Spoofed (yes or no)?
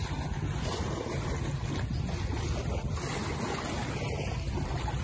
no